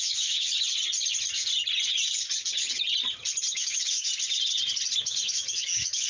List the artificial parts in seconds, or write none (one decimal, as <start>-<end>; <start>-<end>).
0.0-0.5; 3.5-4.1; 5.0-6.1